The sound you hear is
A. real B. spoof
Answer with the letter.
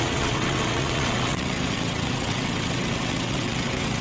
B